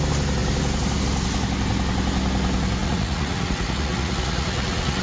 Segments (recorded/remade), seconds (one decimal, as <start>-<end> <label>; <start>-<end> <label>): 0.0-2.8 recorded; 2.8-5.0 remade